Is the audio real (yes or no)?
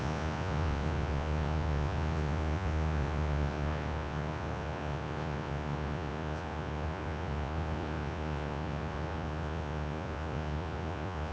no